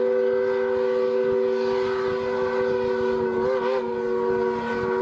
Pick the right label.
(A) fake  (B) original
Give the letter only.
B